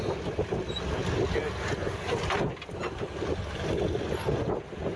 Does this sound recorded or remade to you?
recorded